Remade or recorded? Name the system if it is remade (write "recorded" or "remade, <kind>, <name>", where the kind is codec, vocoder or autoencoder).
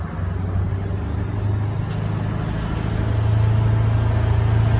recorded